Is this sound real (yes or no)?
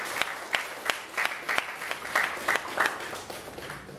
yes